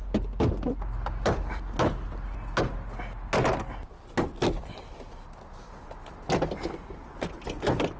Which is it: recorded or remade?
recorded